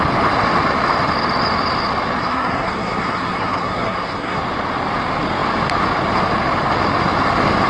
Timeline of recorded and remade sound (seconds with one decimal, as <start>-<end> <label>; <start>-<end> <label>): 0.0-2.2 recorded; 2.2-4.4 remade; 4.4-7.7 recorded